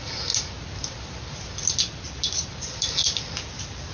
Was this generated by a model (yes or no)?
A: no